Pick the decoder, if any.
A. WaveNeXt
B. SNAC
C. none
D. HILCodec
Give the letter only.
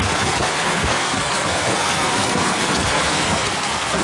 B